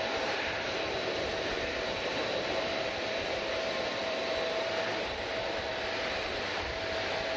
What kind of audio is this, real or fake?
fake